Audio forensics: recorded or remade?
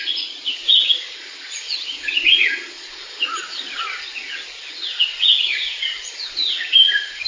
remade